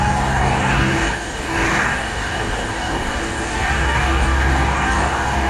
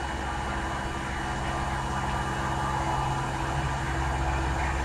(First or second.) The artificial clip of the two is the first